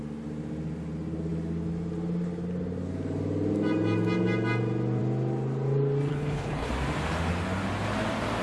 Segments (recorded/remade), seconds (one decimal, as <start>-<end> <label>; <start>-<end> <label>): 0.0-6.1 recorded; 6.1-6.7 remade; 6.7-8.4 recorded

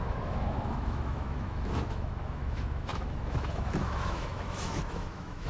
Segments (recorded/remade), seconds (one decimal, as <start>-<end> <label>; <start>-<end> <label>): 0.0-5.5 remade